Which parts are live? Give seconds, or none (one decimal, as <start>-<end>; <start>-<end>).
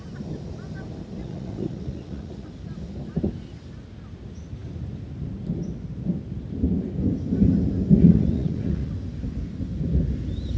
0.0-1.2; 2.5-8.0; 8.9-10.6